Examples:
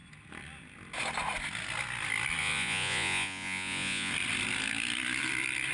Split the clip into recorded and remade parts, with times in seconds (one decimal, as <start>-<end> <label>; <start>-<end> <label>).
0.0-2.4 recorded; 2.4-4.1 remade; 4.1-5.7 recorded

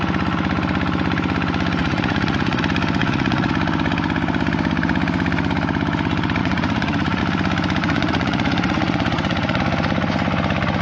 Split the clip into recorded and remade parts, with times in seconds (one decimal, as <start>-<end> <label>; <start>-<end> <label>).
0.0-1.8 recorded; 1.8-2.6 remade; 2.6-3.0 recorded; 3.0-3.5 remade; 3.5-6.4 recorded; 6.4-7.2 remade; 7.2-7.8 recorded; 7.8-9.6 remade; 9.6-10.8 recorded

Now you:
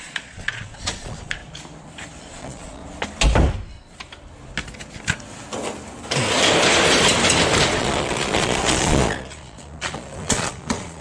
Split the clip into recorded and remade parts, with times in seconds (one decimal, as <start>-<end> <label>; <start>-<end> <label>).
0.0-1.4 remade; 1.4-2.2 recorded; 2.2-2.8 remade; 2.8-7.8 recorded; 7.8-11.0 remade